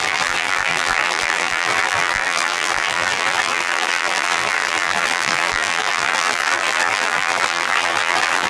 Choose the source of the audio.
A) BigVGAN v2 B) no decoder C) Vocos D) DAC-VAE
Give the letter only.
A